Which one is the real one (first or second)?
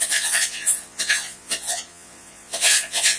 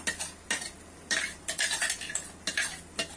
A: second